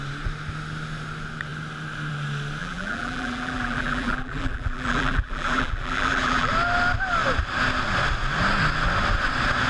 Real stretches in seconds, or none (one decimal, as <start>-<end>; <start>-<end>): 0.0-2.6; 6.5-9.7